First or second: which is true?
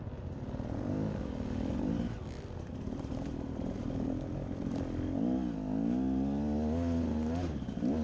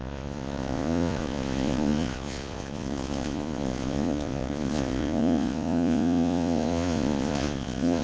first